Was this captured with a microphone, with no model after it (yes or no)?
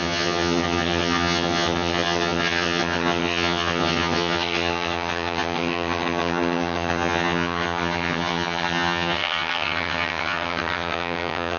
no